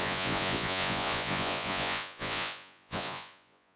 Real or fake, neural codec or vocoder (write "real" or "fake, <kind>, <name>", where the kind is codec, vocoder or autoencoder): fake, vocoder, Vocos